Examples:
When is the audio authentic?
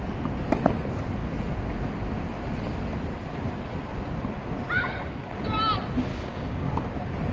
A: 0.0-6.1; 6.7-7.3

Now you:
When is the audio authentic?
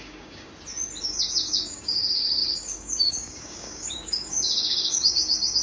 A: 0.5-1.0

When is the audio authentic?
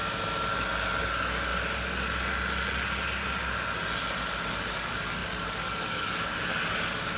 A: 0.0-1.0; 1.5-4.5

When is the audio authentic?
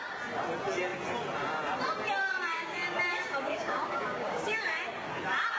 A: 0.0-2.5; 4.8-5.6